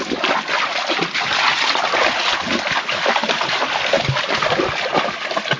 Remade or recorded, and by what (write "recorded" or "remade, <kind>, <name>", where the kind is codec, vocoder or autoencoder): recorded